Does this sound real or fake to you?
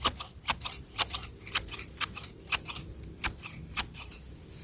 real